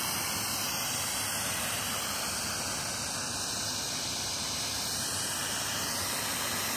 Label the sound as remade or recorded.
recorded